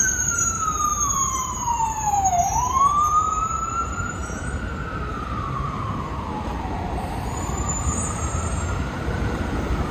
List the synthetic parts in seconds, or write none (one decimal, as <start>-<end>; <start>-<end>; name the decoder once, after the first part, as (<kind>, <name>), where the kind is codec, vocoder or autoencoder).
0.0-4.2 (vocoder, BigVGAN v2); 5.1-9.9